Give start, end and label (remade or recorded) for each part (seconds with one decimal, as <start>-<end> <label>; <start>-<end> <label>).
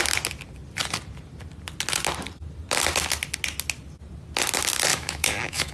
0.0-4.9 recorded; 4.9-5.7 remade